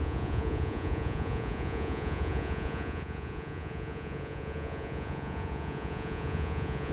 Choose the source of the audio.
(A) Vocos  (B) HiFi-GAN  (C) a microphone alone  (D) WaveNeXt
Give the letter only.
A